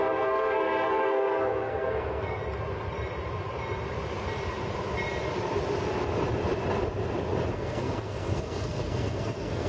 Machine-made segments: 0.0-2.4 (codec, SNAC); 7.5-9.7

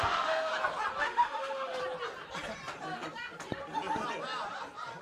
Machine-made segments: 0.0-0.5 (autoencoder, DAC-VAE); 1.0-1.8